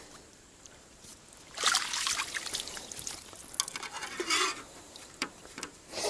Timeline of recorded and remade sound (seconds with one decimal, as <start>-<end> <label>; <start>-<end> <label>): 0.0-1.1 remade; 1.1-4.8 recorded; 4.8-6.1 remade